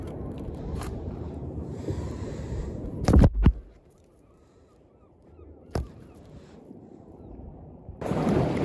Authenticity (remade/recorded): remade